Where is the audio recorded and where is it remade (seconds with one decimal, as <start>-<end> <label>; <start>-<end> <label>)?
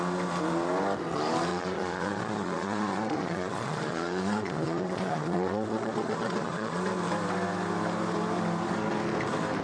0.0-1.5 recorded; 1.5-6.8 remade; 6.8-9.6 recorded